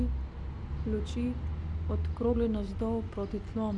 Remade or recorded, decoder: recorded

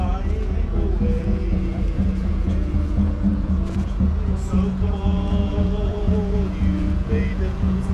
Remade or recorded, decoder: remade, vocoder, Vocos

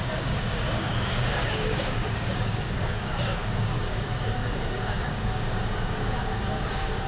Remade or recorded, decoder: remade, codec, DAC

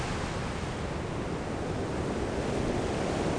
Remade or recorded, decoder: recorded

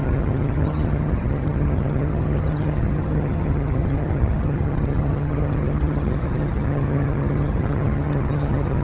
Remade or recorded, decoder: remade, vocoder, HiFi-GAN